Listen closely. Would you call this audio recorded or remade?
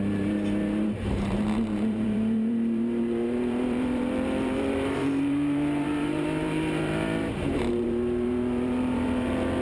remade